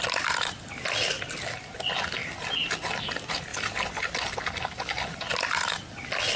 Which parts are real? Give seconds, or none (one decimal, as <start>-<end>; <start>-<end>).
0.0-6.4